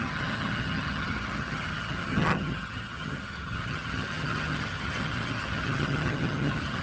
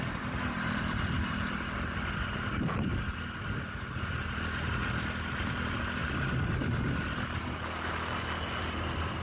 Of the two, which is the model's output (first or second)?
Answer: first